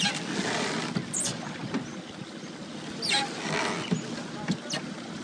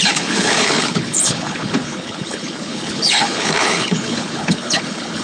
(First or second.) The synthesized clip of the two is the second